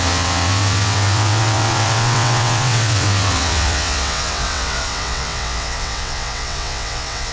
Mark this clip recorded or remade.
remade